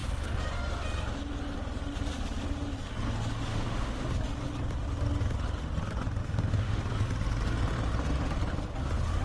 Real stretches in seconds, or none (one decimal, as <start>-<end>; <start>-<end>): 0.0-3.5; 4.1-6.2; 6.8-9.2